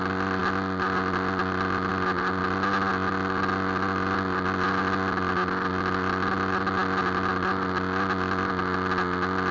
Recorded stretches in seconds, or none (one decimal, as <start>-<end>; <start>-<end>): 0.0-9.5